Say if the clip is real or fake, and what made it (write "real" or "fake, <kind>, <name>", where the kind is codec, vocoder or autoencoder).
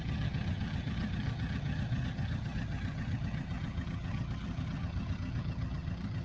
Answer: fake, vocoder, HiFi-GAN